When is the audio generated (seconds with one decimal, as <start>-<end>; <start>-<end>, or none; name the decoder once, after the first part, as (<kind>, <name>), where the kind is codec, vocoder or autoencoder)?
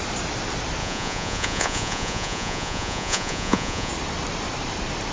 0.8-3.9 (vocoder, Vocos)